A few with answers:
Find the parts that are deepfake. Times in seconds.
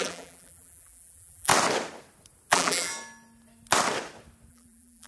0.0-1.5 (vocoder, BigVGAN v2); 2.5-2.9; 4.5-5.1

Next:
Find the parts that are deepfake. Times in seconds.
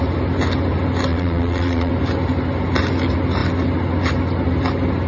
1.1-1.9 (vocoder, Vocos)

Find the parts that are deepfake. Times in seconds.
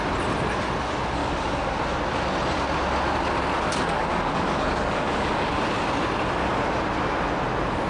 1.2-1.8 (codec, DAC); 3.7-5.6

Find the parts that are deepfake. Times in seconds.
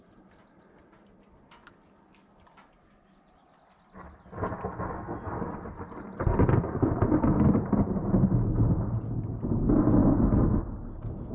none